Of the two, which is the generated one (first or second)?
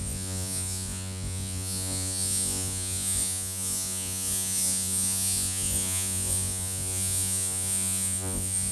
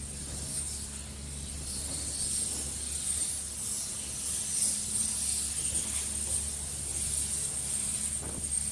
first